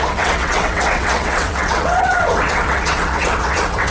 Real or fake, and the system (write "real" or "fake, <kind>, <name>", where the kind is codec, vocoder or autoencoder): fake, vocoder, WaveNeXt